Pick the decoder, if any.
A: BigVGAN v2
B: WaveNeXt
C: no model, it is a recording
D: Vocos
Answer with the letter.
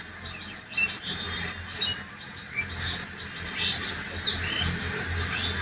C